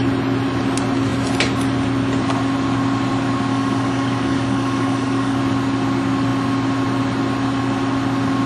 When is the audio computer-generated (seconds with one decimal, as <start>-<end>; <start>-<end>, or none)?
3.5-5.4